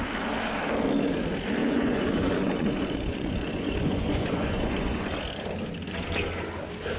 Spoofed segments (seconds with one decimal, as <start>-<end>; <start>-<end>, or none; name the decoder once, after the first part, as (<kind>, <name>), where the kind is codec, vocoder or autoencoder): 1.6-5.2 (vocoder, Vocos)